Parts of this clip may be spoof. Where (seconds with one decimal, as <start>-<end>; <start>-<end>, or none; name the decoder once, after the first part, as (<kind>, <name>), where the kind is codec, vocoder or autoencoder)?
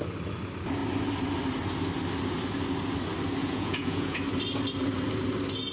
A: 3.4-4.2 (vocoder, Vocos)